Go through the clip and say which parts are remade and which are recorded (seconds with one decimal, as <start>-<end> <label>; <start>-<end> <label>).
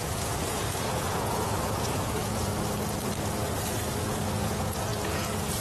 0.0-2.5 remade; 2.5-4.0 recorded; 4.0-5.6 remade